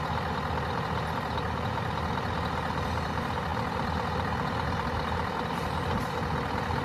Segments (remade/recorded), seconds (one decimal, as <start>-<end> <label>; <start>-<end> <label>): 0.0-6.8 recorded